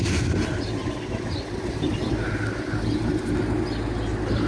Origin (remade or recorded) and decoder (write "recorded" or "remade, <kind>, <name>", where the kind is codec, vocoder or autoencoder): recorded